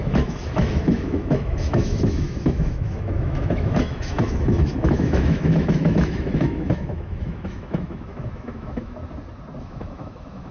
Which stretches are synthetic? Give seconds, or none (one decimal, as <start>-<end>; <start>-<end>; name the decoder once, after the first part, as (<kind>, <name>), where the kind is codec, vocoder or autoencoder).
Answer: 0.0-9.0 (autoencoder, DAC-VAE); 9.6-10.5